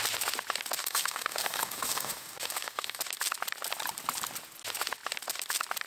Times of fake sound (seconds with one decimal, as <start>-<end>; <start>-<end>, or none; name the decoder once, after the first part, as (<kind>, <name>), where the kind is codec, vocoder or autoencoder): 0.8-3.0 (codec, DAC)